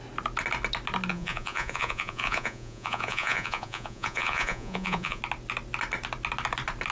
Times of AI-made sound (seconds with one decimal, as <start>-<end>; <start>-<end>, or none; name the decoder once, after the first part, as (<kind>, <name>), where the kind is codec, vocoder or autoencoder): 1.1-5.2 (vocoder, Vocos)